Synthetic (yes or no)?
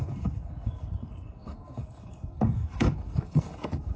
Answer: yes